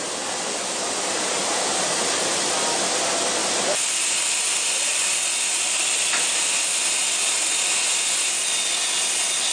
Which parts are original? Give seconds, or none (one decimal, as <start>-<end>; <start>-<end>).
0.0-9.5